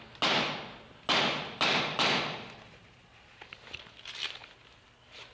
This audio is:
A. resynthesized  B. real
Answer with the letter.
B